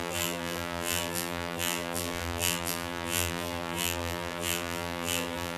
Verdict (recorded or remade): remade